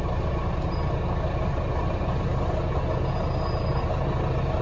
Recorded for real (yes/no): yes